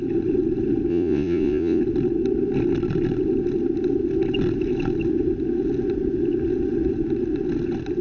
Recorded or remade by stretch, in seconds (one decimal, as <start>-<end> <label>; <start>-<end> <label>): 0.0-0.9 recorded; 0.9-1.8 remade; 1.8-8.0 recorded